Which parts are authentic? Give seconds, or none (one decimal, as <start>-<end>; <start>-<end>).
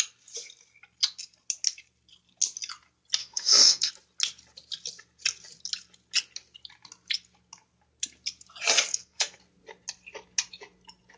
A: 0.0-3.2; 3.9-8.9; 9.4-11.2